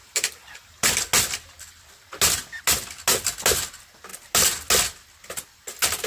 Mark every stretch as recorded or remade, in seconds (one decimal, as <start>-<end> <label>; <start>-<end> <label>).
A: 0.0-1.0 remade; 1.0-6.1 recorded